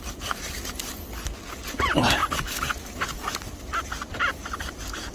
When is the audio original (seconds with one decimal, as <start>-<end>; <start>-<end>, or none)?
0.9-1.7; 2.2-3.8